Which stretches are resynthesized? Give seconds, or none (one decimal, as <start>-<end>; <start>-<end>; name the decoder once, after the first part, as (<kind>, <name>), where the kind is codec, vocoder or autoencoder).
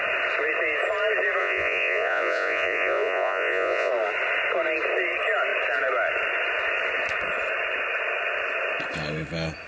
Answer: 1.4-3.9 (vocoder, Vocos)